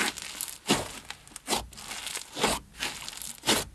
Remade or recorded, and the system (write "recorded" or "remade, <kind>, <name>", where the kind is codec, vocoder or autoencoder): recorded